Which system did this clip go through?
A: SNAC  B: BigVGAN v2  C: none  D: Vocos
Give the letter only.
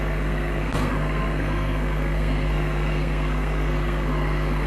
A